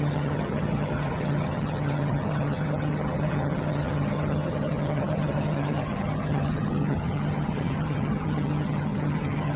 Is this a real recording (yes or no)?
no